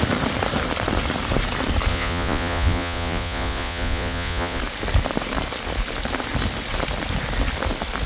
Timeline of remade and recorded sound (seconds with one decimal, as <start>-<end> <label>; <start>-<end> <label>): 0.0-1.9 recorded; 1.9-4.6 remade; 4.6-8.1 recorded